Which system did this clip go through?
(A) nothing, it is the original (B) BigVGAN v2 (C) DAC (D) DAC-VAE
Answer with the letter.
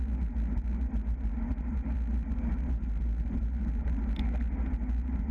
A